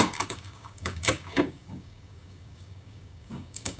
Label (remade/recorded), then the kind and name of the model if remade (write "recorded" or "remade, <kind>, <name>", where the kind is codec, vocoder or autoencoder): remade, codec, DAC